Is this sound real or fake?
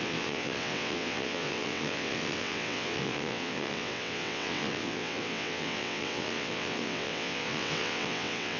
fake